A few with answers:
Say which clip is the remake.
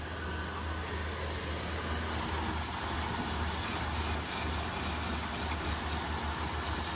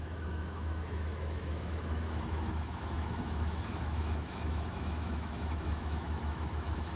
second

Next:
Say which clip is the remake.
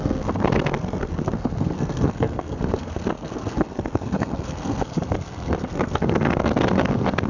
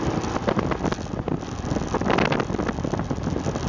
first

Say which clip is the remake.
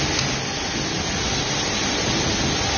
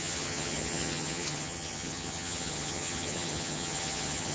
second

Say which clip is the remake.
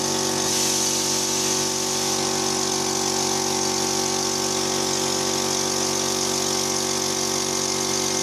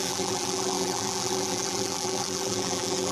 second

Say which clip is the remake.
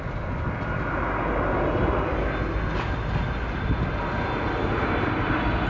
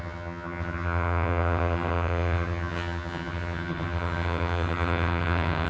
second